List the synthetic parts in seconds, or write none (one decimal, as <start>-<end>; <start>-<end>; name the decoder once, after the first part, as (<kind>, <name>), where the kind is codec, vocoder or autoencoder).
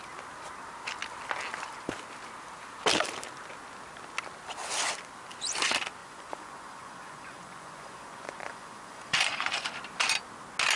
6.0-9.7 (vocoder, Vocos)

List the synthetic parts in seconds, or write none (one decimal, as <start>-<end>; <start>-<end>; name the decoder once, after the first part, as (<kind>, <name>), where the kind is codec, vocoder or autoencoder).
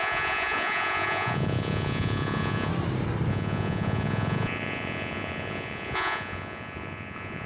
0.0-2.7 (vocoder, Vocos); 3.3-7.5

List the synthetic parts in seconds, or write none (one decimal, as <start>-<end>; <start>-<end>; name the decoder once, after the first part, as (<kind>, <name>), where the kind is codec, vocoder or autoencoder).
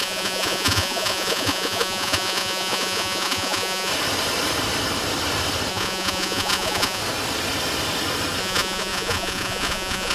0.0-3.9 (vocoder, Vocos); 5.7-7.0; 8.4-10.1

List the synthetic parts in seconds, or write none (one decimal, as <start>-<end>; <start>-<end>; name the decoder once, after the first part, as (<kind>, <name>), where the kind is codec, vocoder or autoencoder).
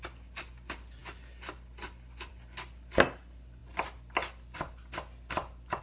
none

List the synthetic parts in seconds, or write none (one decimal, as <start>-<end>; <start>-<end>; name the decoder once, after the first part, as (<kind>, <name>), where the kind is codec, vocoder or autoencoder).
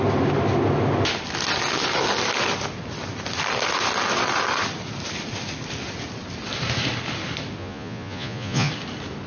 7.6-8.7 (vocoder, Vocos)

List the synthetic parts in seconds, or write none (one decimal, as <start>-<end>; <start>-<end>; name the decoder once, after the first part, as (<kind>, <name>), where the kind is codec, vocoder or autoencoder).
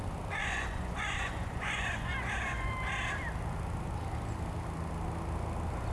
0.4-2.7 (vocoder, Vocos)